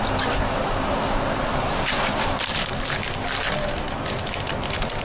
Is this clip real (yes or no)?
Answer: no